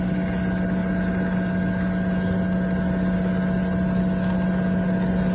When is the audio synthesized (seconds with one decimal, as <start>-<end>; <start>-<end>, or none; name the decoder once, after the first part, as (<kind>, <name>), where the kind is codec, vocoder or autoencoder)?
none